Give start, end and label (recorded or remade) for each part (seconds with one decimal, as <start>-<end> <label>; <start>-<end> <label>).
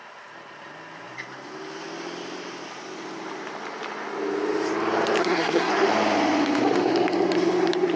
0.0-5.2 recorded; 5.2-5.7 remade; 5.7-8.0 recorded